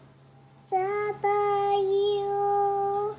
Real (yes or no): yes